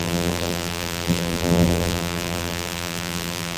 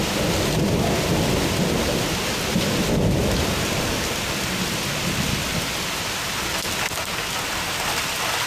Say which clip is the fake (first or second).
first